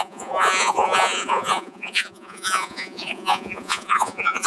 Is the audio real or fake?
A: fake